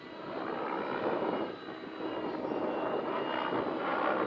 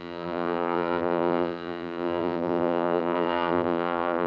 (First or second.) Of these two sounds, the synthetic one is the second